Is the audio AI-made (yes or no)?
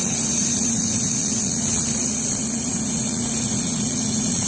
yes